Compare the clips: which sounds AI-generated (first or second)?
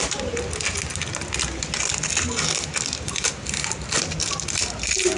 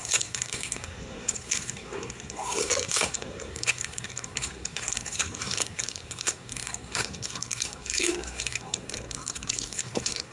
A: second